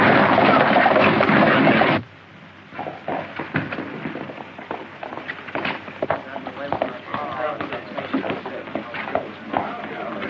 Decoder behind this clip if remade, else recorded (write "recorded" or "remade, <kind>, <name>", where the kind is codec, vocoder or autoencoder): recorded